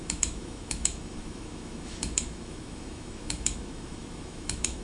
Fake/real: fake